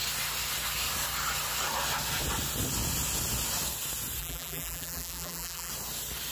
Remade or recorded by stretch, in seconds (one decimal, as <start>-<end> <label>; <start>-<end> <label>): 0.0-4.2 recorded; 4.2-5.7 remade; 5.7-6.3 recorded